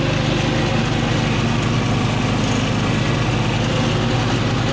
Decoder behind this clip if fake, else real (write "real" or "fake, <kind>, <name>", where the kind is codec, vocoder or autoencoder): real